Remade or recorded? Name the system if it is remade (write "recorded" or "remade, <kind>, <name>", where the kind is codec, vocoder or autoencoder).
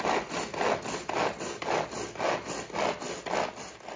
recorded